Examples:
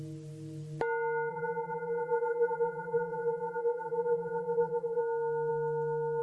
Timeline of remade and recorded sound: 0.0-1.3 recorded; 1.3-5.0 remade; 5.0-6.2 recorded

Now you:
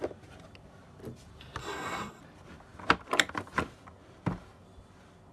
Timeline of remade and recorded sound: 0.0-1.6 recorded; 1.6-2.2 remade; 2.2-5.3 recorded

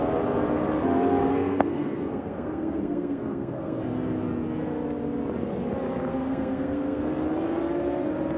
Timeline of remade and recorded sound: 0.0-1.2 recorded; 1.2-3.8 remade; 3.8-6.1 recorded; 6.1-7.0 remade; 7.0-8.4 recorded

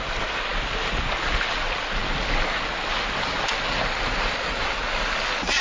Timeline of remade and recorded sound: 0.0-5.6 recorded

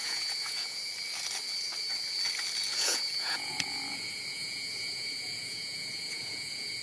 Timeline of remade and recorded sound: 0.0-0.8 remade; 0.8-2.7 recorded; 2.7-6.8 remade

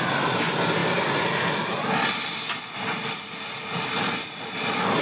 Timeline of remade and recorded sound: 0.0-5.0 recorded

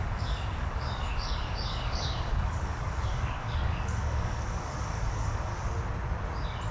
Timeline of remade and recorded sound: 0.0-5.5 remade; 5.5-6.7 recorded

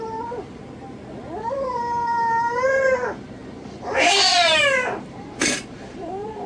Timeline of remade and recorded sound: 0.0-0.6 remade; 0.6-1.4 recorded; 1.4-6.5 remade